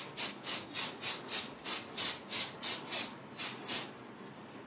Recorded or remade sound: recorded